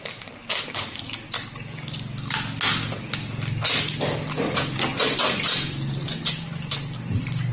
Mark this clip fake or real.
real